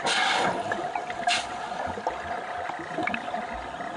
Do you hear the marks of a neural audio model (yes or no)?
no